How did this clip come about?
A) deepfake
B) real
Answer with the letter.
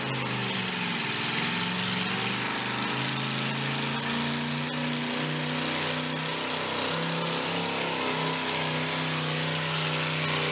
B